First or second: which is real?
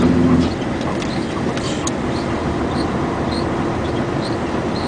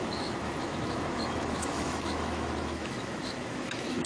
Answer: first